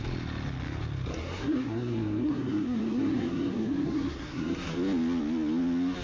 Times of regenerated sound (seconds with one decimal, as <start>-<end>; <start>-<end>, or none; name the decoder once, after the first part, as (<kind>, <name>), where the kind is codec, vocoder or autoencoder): 1.1-4.7 (codec, SNAC)